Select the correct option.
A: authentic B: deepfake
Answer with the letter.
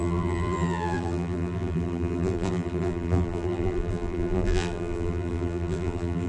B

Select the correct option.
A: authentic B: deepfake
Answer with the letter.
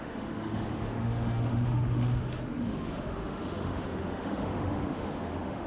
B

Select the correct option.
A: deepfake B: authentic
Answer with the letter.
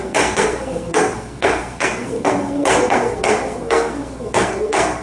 A